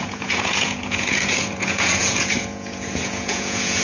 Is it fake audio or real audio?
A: fake